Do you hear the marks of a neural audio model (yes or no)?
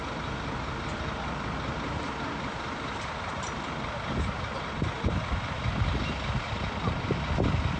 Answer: no